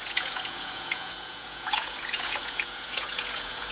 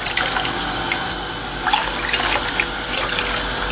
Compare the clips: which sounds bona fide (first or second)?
second